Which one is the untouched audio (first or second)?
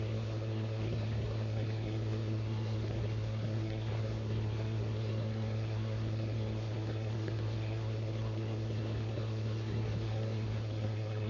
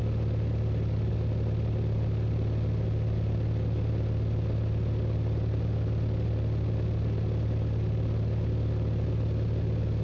second